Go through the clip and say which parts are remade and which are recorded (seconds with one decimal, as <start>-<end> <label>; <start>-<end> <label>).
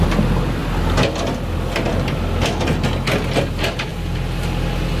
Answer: 0.0-5.0 recorded